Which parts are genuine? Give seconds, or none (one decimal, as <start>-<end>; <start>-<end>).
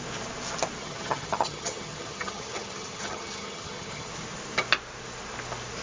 0.0-0.8; 4.1-5.8